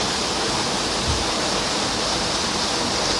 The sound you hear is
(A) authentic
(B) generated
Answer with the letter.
A